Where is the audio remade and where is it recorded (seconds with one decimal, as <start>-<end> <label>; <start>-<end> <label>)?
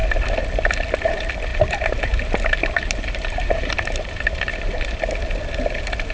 0.0-1.5 recorded; 1.5-5.0 remade; 5.0-6.1 recorded